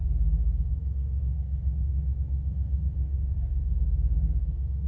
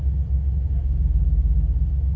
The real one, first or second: second